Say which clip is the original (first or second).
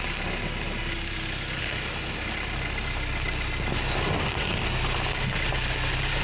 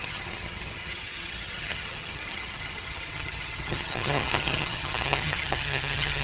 first